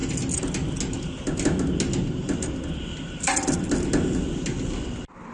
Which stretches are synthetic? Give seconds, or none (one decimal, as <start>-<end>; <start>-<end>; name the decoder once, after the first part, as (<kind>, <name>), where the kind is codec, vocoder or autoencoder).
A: none